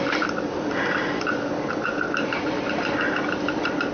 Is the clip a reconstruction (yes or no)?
no